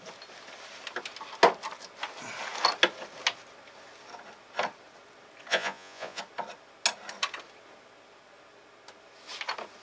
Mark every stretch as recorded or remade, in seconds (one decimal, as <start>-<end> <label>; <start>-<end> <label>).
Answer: 0.0-5.5 recorded; 5.5-6.2 remade; 6.2-9.8 recorded